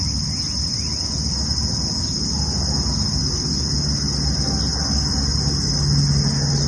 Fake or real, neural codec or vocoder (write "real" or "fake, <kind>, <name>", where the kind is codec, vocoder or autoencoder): real